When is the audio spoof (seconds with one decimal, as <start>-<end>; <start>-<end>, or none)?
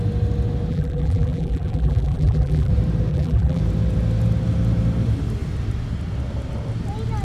0.7-2.7; 3.1-3.6